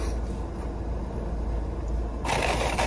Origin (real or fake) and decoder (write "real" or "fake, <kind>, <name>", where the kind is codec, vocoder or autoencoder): real